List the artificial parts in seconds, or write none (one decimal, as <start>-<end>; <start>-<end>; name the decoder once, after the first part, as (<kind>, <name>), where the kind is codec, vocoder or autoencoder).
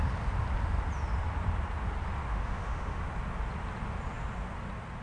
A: 2.3-3.0 (autoencoder, DAC-VAE)